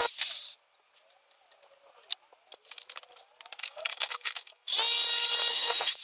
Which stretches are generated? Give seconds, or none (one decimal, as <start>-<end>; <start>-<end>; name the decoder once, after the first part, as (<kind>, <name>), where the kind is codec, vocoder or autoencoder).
3.6-4.7 (autoencoder, DAC-VAE); 5.5-6.0